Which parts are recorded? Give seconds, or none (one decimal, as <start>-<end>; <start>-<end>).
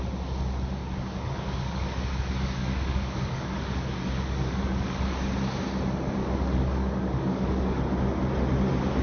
0.0-0.8; 4.9-6.2; 7.8-9.0